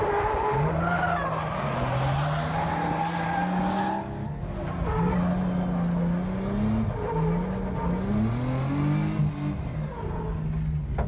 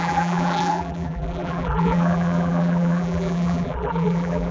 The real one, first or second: first